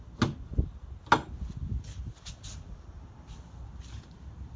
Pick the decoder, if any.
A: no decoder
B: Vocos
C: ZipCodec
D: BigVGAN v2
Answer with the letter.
A